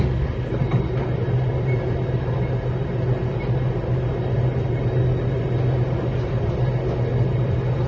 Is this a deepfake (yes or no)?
no